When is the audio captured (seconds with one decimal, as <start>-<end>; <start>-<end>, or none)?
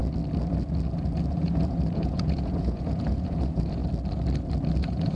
0.0-1.3; 3.8-4.8